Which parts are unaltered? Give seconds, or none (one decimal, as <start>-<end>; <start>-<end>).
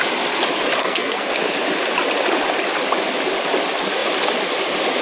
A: 0.0-0.8; 1.3-5.0